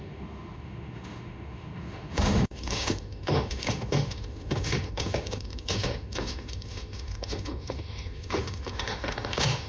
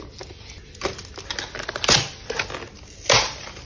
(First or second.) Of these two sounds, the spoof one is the first